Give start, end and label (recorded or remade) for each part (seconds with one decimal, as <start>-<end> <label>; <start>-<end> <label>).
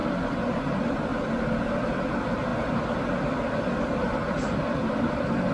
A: 0.0-1.1 remade; 1.1-1.8 recorded; 1.8-2.5 remade; 2.5-3.8 recorded; 3.8-5.5 remade